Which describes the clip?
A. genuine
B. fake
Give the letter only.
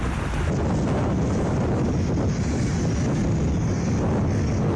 A